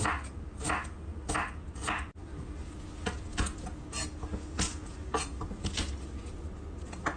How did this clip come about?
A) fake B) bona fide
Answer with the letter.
B